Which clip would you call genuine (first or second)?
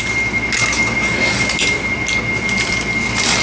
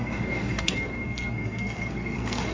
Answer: first